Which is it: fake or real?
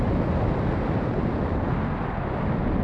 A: real